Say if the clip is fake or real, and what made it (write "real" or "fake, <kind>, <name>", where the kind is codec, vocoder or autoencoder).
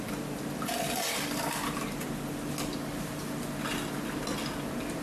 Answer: real